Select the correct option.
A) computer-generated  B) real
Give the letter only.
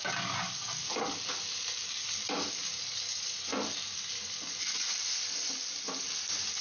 B